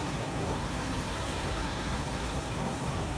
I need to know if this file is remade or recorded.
remade